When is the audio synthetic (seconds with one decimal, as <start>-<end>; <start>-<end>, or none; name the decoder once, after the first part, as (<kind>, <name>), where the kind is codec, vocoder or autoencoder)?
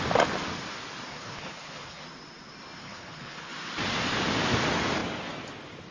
1.1-2.0 (codec, HILCodec); 2.8-3.5